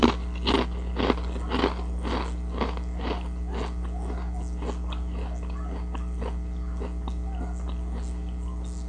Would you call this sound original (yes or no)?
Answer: yes